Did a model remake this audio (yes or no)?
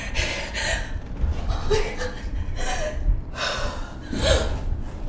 no